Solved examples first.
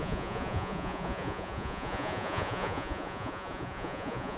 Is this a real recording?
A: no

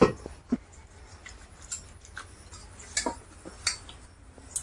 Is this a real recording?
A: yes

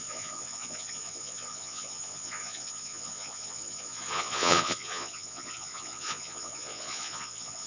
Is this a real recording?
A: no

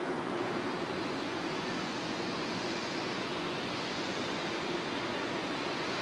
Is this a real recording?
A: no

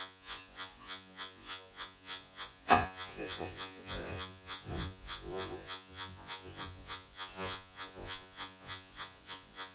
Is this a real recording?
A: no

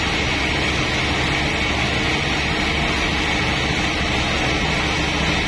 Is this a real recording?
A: yes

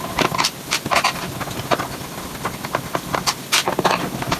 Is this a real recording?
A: yes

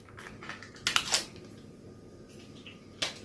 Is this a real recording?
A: yes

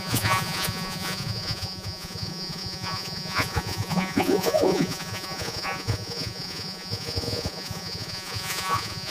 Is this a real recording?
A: no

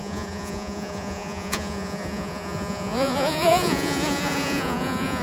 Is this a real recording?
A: no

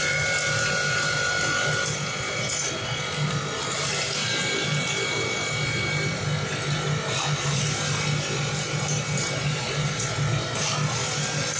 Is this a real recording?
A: yes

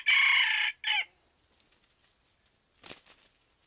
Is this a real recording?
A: yes